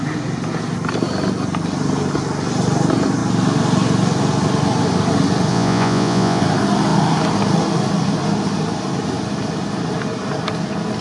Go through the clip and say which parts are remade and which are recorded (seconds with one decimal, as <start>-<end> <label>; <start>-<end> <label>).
0.0-5.5 recorded; 5.5-6.4 remade; 6.4-11.0 recorded